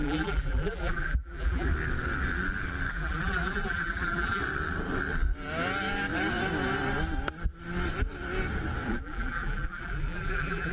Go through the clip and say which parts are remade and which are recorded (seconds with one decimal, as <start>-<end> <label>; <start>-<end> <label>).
0.0-1.7 remade; 1.7-2.9 recorded; 2.9-4.4 remade; 4.4-8.9 recorded; 8.9-10.7 remade